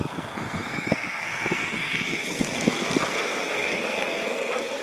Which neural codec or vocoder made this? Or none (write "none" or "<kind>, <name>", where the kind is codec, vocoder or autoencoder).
codec, SNAC